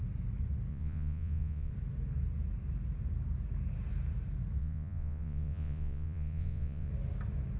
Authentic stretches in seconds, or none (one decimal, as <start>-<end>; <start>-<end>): 0.0-0.7; 1.7-4.6; 6.9-7.6